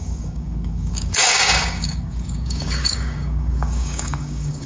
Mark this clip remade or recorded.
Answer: remade